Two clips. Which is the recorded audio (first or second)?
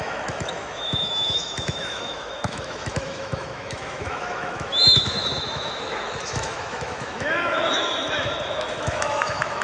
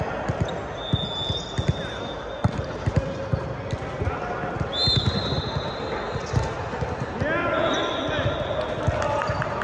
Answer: second